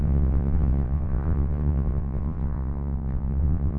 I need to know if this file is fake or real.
fake